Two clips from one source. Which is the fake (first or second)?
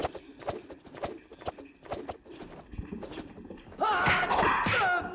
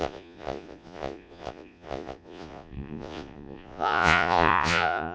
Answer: second